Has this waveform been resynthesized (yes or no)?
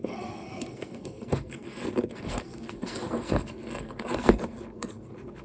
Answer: yes